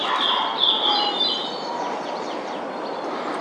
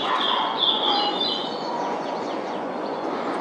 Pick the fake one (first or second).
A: second